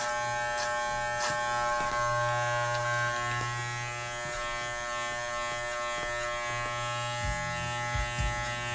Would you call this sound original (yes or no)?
yes